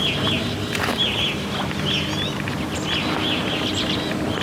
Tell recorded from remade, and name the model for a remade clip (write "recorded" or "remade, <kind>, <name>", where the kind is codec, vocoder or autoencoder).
remade, vocoder, BigVGAN v2